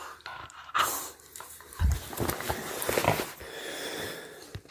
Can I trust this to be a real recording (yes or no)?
yes